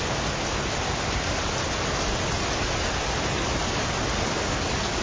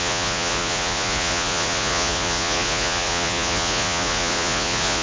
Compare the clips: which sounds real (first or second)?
first